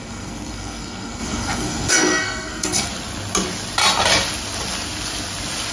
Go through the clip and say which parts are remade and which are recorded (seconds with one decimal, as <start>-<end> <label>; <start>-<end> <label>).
0.0-2.9 remade; 2.9-5.7 recorded